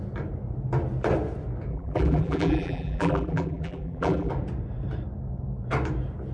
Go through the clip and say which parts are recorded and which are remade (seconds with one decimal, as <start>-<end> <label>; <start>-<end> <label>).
0.0-1.7 recorded; 1.7-4.3 remade; 4.3-6.3 recorded